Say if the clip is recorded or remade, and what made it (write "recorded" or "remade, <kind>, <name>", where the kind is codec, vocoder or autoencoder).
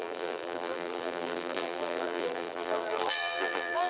remade, vocoder, BigVGAN v2